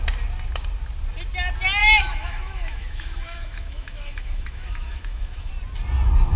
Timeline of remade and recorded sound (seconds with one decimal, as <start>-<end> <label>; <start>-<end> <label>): 0.0-1.8 recorded; 1.8-5.5 remade; 5.5-6.4 recorded